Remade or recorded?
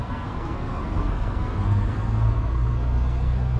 remade